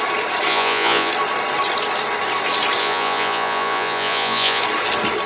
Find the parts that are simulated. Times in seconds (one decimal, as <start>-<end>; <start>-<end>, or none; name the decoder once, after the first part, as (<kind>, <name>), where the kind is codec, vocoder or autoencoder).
0.5-1.1 (vocoder, Vocos); 2.8-4.6